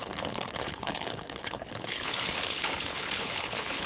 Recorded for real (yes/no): no